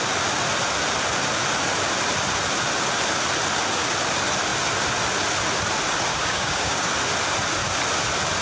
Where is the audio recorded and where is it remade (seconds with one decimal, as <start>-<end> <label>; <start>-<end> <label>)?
0.0-6.1 recorded; 6.1-6.9 remade; 6.9-8.4 recorded